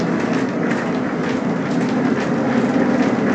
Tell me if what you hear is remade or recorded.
recorded